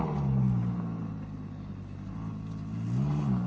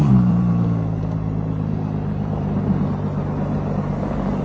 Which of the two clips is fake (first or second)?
second